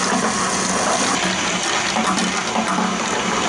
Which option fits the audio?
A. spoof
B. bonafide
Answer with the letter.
B